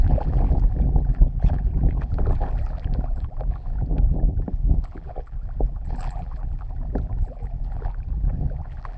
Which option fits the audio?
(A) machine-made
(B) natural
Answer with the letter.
A